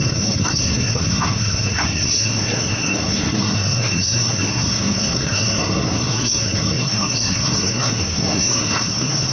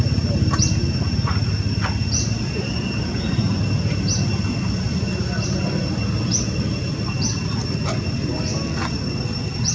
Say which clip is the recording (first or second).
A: second